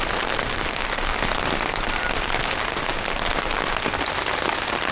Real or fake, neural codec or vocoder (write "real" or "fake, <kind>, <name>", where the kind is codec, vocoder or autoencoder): real